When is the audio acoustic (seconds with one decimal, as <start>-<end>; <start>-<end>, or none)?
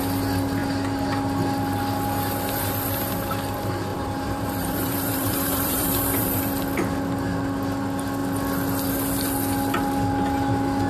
0.0-3.9; 6.4-10.9